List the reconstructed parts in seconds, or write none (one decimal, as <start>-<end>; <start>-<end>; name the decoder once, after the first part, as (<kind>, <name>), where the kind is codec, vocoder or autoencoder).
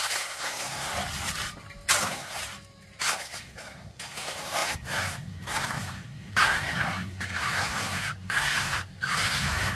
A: 0.0-0.9 (codec, SNAC); 2.0-2.4; 3.0-9.7